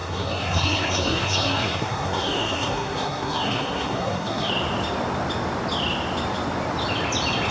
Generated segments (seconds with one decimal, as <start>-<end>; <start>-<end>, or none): 0.0-4.5